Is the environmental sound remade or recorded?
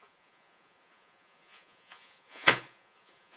remade